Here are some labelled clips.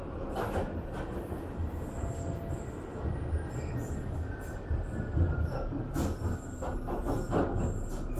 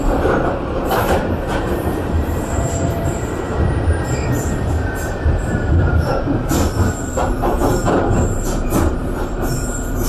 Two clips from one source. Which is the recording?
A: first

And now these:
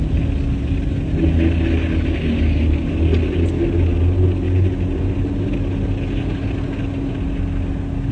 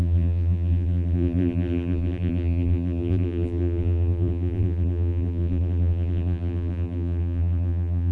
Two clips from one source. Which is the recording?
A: first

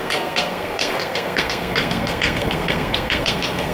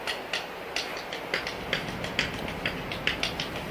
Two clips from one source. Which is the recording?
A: second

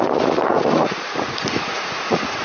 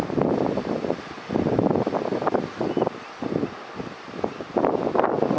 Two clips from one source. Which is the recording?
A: second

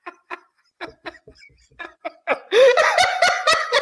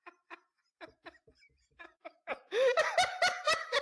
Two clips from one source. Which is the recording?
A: second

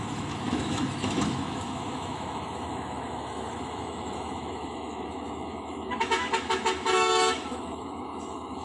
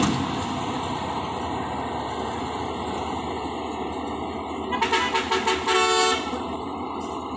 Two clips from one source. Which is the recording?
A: second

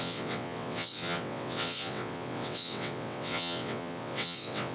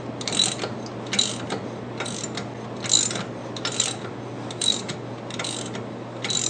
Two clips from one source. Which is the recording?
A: second